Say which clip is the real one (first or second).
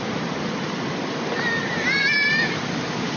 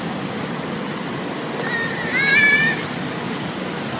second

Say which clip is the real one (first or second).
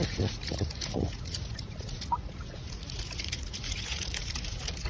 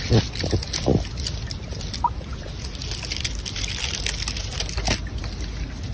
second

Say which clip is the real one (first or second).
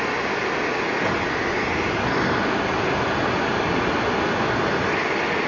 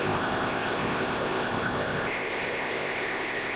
first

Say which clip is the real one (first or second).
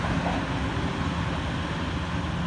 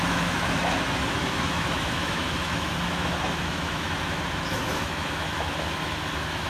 first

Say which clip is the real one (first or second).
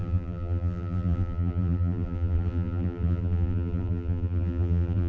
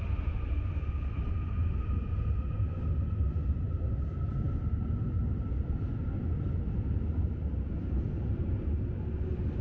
second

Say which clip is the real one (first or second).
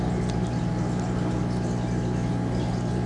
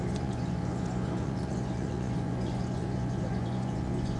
first